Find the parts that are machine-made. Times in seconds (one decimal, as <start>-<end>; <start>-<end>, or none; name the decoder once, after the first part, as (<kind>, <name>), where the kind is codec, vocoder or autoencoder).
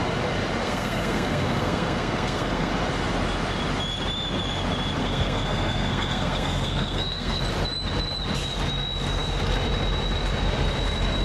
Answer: 0.6-2.7 (codec, SNAC); 5.0-7.4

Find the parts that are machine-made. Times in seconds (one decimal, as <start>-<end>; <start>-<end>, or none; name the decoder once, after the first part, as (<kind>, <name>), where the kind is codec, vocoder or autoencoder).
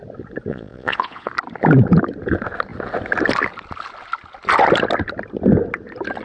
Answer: 0.5-1.3 (vocoder, Vocos)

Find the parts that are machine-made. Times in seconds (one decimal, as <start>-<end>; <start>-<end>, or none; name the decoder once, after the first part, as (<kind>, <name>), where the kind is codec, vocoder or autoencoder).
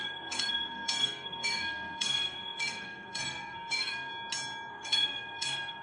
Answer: 0.0-4.1 (codec, SNAC); 4.7-5.8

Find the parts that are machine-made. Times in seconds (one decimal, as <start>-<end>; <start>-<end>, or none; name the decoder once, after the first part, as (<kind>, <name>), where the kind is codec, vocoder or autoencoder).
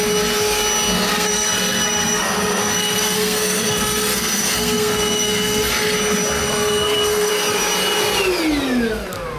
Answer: 1.1-5.7 (codec, SNAC); 6.4-7.3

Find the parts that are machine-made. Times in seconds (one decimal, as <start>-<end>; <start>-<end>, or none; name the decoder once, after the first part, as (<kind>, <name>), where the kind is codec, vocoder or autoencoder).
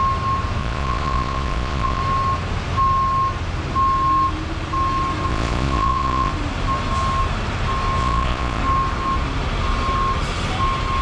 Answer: 0.6-2.0 (vocoder, Vocos); 5.3-6.3; 8.0-8.6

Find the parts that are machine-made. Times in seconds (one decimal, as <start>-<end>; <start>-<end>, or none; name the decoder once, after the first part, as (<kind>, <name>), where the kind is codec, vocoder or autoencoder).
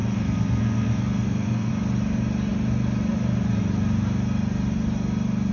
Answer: 0.0-1.7 (codec, SNAC)